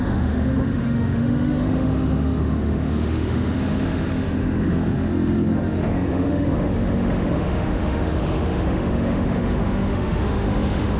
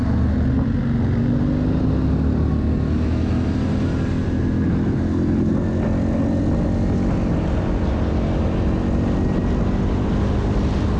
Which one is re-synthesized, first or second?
first